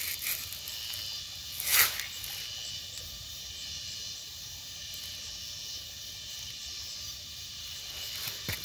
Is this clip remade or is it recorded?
recorded